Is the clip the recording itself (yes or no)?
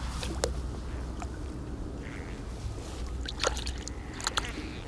yes